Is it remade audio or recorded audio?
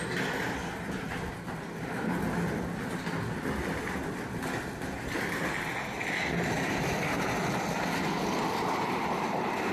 recorded